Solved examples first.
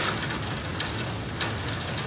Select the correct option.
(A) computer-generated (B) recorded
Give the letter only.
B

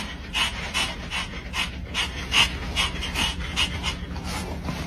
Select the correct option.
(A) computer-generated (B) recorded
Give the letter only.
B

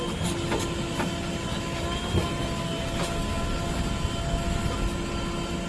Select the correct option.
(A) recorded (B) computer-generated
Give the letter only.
A